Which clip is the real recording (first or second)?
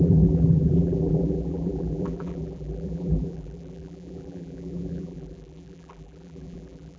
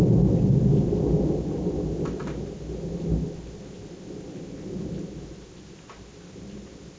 second